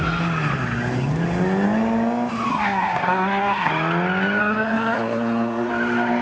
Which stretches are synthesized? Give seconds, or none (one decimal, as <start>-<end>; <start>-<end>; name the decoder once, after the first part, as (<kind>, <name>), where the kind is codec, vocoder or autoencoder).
2.5-3.7 (codec, SNAC); 4.4-5.7